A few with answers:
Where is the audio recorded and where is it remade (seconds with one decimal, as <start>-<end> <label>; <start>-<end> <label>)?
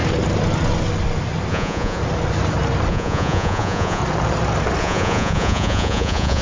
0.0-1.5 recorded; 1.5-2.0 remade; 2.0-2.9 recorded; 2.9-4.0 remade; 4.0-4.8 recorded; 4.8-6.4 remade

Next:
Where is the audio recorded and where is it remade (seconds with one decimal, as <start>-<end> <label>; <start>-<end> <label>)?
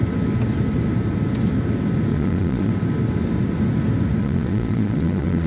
0.0-2.1 recorded; 2.1-2.7 remade; 2.7-4.2 recorded; 4.2-5.5 remade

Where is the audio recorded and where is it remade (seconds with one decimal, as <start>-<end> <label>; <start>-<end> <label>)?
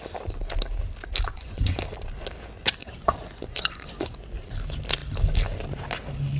0.0-1.3 recorded; 1.3-1.8 remade; 1.8-2.8 recorded; 2.8-4.2 remade; 4.2-6.4 recorded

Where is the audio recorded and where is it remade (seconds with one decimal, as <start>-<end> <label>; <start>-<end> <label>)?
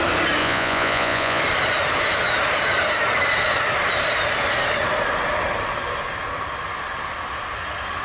0.0-0.4 recorded; 0.4-1.4 remade; 1.4-8.0 recorded